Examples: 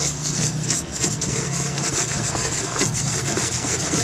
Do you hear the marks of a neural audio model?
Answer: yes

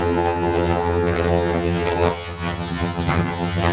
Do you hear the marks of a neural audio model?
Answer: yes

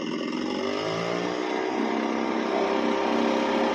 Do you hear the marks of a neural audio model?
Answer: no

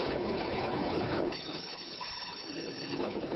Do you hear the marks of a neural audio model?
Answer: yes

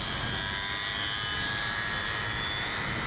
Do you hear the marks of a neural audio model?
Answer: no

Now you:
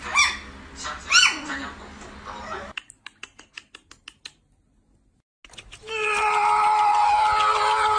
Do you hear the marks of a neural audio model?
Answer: no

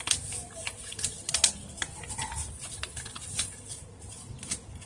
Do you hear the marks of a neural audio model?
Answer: no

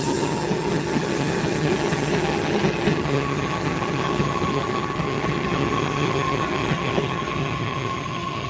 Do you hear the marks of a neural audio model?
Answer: yes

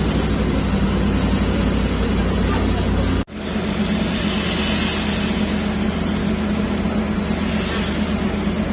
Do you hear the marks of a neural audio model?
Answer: no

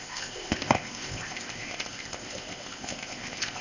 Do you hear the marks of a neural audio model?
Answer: yes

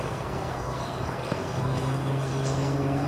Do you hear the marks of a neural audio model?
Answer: yes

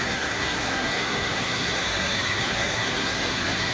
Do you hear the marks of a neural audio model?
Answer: yes